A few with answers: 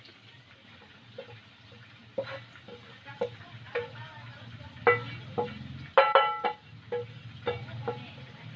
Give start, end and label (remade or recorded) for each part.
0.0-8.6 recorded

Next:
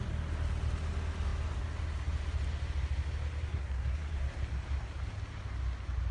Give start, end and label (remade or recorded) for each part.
0.0-3.5 recorded; 3.5-4.2 remade; 4.2-6.1 recorded

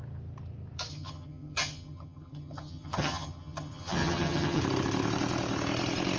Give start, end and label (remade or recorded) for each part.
0.0-0.9 recorded; 0.9-4.6 remade; 4.6-6.2 recorded

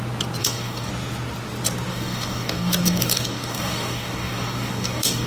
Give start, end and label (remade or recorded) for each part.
0.0-0.4 recorded; 0.4-0.9 remade; 0.9-1.9 recorded; 1.9-5.3 remade